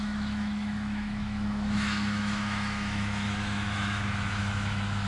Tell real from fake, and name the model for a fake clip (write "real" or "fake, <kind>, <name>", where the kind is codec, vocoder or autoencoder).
fake, autoencoder, DAC-VAE